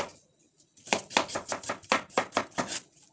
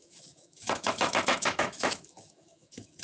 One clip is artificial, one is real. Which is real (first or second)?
first